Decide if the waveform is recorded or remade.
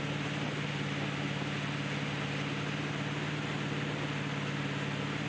recorded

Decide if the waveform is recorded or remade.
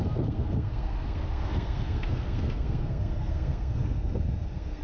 remade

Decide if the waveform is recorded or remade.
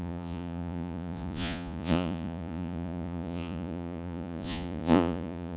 remade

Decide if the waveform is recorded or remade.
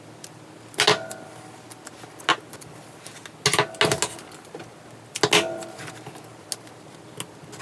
recorded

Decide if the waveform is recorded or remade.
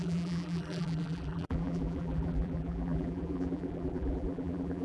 remade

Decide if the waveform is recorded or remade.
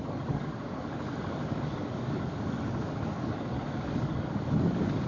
remade